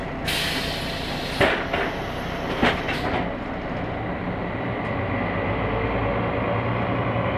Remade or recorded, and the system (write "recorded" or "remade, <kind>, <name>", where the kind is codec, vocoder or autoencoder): recorded